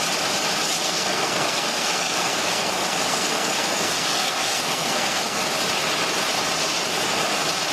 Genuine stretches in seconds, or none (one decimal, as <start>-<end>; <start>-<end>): 0.0-0.8; 5.4-7.7